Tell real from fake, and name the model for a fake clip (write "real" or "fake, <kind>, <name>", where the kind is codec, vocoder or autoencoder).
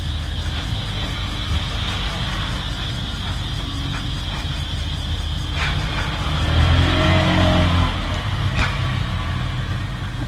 real